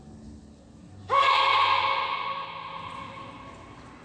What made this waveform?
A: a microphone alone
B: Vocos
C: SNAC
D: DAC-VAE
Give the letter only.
A